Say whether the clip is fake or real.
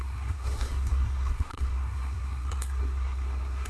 fake